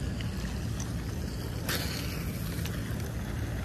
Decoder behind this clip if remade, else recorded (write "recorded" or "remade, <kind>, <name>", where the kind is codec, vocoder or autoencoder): recorded